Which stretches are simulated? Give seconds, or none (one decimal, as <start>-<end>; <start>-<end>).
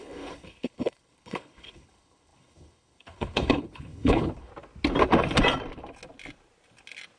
0.0-4.5